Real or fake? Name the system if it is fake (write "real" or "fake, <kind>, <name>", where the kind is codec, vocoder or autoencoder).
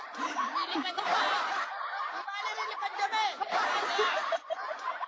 real